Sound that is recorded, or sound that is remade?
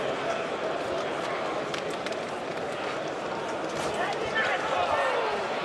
remade